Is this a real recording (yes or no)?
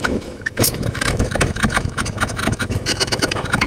no